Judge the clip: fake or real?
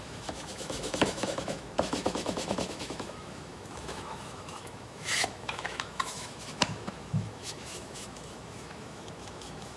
fake